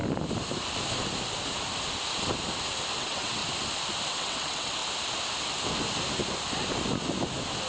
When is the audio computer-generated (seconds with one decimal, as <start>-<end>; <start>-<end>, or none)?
3.0-3.4; 4.1-4.8